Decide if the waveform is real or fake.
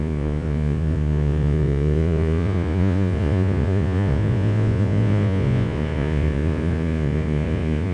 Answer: fake